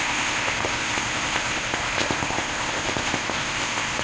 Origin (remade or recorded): remade